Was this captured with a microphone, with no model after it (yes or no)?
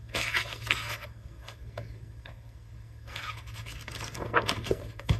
no